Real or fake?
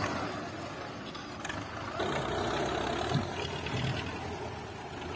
real